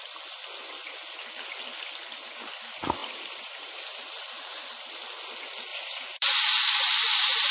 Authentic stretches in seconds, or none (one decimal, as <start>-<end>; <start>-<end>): 0.0-3.0; 4.9-5.7; 6.3-7.5